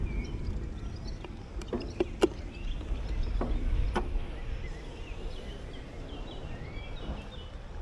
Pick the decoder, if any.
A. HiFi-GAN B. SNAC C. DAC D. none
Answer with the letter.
D